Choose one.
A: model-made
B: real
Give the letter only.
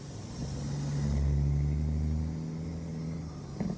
B